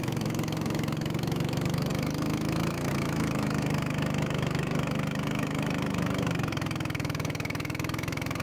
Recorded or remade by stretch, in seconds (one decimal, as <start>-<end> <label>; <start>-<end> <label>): 0.0-8.4 remade